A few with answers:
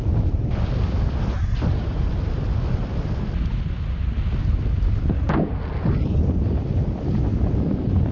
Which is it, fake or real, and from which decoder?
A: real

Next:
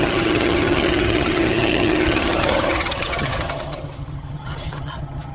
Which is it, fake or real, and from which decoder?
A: fake, vocoder, HiFi-GAN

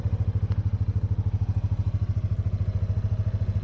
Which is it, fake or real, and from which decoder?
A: real